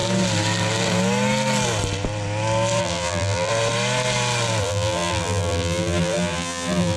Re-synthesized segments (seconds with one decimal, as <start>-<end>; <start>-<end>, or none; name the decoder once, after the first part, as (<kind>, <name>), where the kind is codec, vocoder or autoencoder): 2.8-3.5 (vocoder, BigVGAN v2); 4.6-7.0